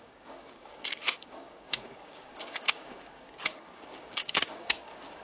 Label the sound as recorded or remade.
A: remade